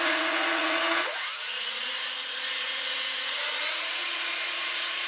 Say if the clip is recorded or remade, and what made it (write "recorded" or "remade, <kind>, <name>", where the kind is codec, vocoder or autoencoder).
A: remade, vocoder, Vocos